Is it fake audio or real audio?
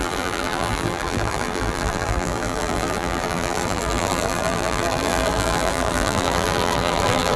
fake